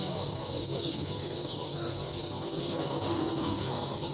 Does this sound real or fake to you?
fake